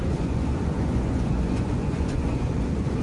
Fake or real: fake